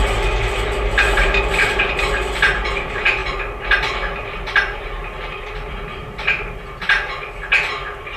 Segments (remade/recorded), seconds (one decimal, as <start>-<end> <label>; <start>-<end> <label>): 0.0-8.2 recorded